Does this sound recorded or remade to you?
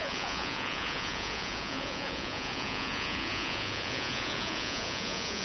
remade